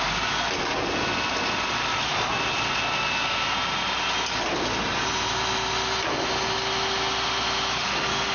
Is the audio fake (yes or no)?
no